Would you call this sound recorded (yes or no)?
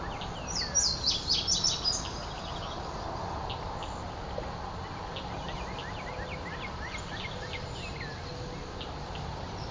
yes